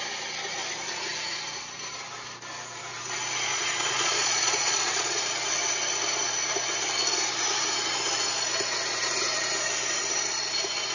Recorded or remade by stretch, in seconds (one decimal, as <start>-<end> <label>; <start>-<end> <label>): 0.0-3.5 recorded; 3.5-5.2 remade; 5.2-10.9 recorded